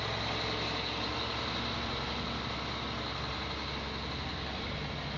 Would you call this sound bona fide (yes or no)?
yes